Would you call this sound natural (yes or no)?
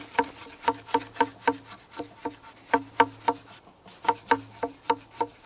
yes